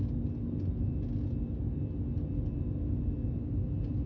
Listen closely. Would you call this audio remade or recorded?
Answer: recorded